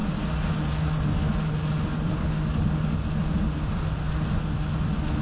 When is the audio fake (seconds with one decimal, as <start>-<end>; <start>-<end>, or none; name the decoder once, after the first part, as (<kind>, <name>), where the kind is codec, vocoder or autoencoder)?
none